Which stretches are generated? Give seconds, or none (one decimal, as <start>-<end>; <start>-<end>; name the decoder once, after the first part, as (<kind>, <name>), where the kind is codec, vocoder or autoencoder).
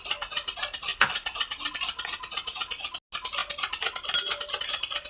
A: none